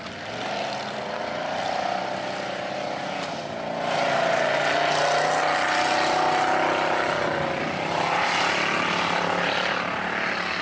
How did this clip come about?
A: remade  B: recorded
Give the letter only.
B